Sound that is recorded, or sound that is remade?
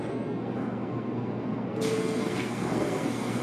remade